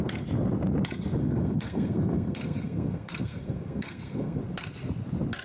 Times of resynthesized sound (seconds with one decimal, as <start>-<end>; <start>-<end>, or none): 1.2-4.4

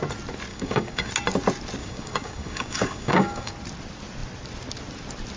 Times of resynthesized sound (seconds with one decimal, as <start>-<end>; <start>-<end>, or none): 0.5-1.1; 1.8-3.5